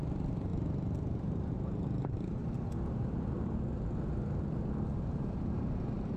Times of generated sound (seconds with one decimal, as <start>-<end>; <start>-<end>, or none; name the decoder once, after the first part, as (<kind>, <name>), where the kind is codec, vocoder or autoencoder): 0.0-0.5 (vocoder, BigVGAN v2); 1.2-2.4; 4.9-6.2